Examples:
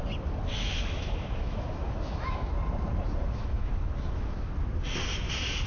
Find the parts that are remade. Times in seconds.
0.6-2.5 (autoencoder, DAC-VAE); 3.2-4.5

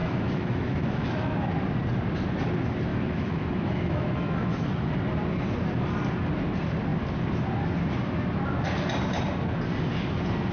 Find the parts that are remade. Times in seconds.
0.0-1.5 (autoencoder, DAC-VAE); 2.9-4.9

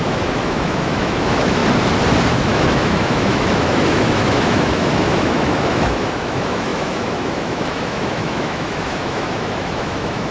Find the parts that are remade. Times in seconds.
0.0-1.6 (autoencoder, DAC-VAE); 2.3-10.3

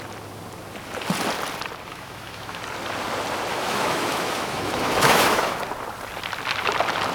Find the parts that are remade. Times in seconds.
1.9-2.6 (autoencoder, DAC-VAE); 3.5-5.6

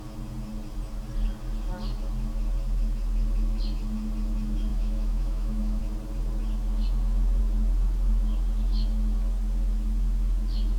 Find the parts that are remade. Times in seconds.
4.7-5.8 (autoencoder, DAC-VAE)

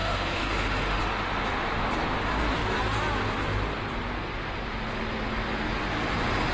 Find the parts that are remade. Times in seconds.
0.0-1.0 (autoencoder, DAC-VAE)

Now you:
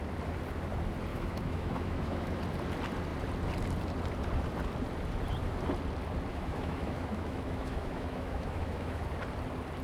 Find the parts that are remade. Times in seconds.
1.1-2.4 (autoencoder, DAC-VAE); 6.3-9.0

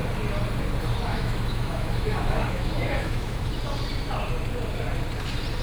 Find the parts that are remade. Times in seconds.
1.1-3.5 (autoencoder, DAC-VAE)